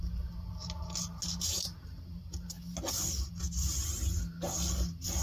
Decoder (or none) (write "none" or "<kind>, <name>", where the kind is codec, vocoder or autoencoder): none